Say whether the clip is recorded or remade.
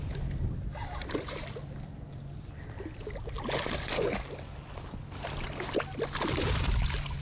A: recorded